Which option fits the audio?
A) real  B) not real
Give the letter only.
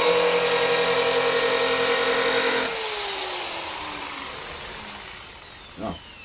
A